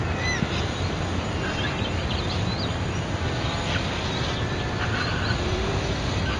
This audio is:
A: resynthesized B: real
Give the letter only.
A